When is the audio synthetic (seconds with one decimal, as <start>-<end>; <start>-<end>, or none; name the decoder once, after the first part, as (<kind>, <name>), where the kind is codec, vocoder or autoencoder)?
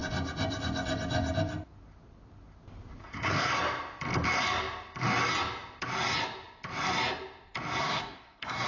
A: 3.0-3.5 (codec, SNAC); 7.8-8.7